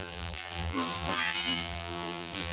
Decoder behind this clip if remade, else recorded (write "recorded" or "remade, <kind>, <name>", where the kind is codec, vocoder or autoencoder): remade, vocoder, BigVGAN v2